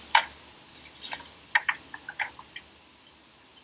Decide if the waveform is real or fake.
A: real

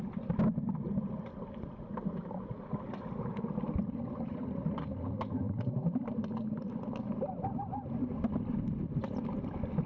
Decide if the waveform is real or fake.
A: real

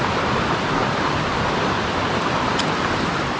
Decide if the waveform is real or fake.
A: real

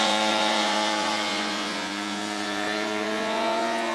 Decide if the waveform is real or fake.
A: fake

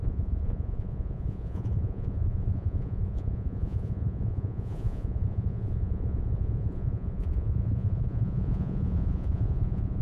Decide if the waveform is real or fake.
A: fake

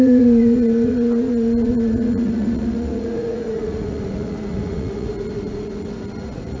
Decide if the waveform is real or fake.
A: fake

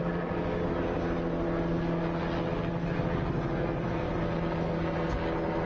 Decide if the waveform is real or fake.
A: real